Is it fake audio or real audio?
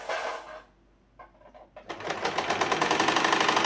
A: real